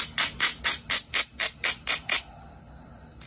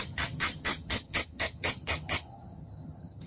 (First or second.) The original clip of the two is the first